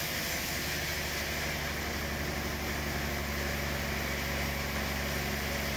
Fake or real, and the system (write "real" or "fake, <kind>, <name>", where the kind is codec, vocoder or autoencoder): real